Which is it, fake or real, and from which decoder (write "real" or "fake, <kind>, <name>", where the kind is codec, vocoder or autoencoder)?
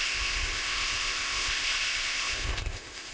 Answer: fake, codec, ZipCodec